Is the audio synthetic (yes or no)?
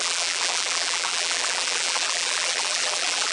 yes